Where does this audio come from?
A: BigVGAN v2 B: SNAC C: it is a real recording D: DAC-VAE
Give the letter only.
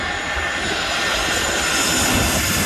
C